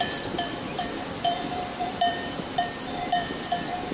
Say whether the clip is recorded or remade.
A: remade